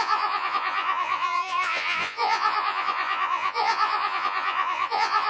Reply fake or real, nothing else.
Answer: fake